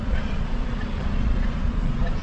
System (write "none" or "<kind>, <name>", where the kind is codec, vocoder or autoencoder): vocoder, Vocos